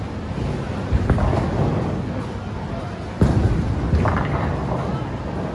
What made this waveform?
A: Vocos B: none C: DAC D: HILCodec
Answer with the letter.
B